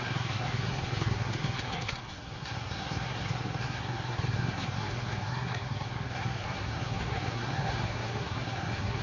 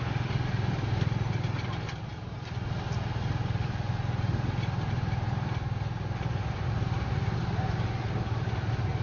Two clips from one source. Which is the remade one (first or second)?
first